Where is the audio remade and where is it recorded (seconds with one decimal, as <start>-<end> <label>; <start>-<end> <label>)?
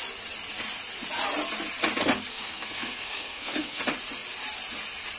0.0-2.3 recorded; 2.3-3.8 remade; 3.8-5.2 recorded